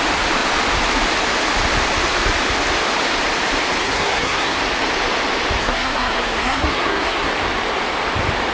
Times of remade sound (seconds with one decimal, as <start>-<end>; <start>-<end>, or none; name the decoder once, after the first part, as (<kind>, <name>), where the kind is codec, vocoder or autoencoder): 3.8-4.6 (codec, SNAC); 5.6-7.3